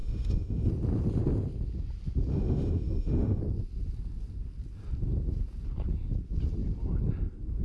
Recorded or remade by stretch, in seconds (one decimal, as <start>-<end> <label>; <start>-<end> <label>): 0.0-0.7 remade; 0.7-2.3 recorded; 2.3-3.4 remade; 3.4-7.6 recorded